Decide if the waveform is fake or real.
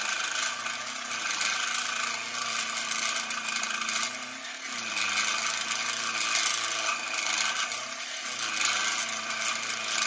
real